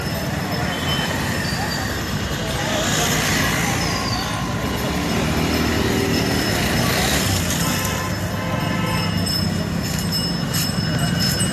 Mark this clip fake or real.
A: real